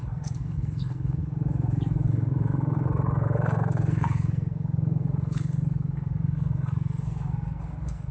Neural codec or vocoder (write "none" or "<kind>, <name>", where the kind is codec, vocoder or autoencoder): codec, SNAC